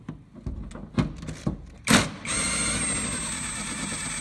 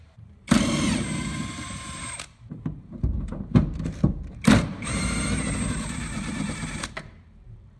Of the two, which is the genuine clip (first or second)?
first